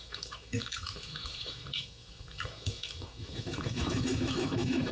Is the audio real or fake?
fake